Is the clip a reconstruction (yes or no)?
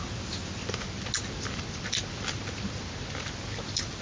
no